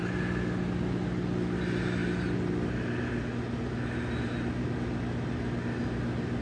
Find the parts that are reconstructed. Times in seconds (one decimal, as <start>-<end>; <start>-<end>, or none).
none